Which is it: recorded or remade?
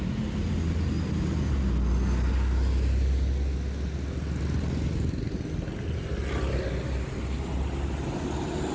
recorded